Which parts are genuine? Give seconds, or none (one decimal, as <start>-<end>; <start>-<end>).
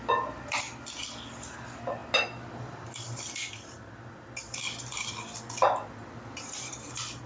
0.0-7.3